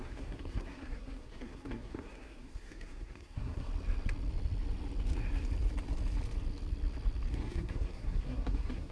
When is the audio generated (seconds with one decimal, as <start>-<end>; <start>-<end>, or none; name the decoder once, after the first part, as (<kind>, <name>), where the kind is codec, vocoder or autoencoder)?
0.0-3.7 (codec, SNAC); 7.3-8.9